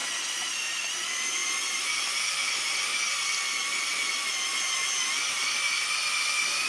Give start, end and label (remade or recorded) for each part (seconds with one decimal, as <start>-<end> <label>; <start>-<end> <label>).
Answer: 0.0-0.7 recorded; 0.7-1.4 remade; 1.4-2.3 recorded; 2.3-2.9 remade; 2.9-6.1 recorded; 6.1-6.7 remade